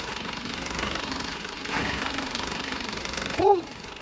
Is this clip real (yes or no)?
no